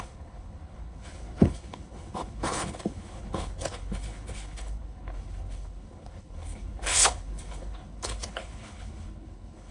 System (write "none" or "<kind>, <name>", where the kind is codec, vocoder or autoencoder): codec, HILCodec